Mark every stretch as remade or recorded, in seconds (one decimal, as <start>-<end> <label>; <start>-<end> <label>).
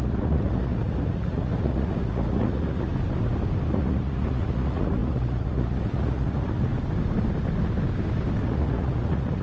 0.0-2.9 remade; 2.9-3.7 recorded; 3.7-6.7 remade; 6.7-8.4 recorded; 8.4-9.4 remade